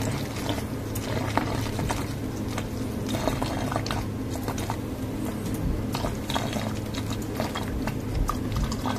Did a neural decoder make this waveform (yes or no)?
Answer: no